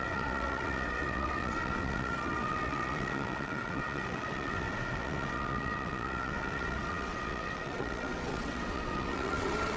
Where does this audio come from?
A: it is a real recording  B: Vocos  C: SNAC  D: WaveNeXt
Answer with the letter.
D